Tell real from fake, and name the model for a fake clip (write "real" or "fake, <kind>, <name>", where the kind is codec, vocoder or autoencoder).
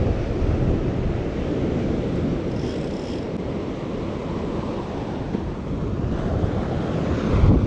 real